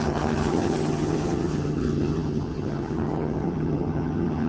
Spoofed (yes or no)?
yes